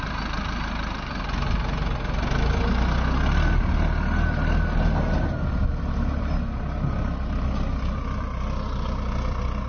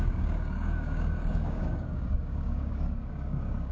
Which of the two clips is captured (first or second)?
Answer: first